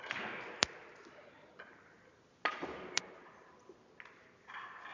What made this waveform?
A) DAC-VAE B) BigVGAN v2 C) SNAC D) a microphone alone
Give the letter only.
D